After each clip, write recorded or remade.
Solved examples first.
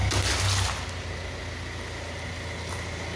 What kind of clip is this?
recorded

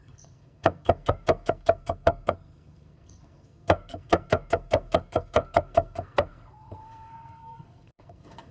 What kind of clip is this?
remade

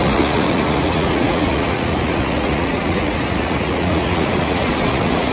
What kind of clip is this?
remade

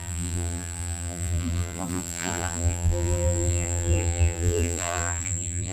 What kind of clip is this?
remade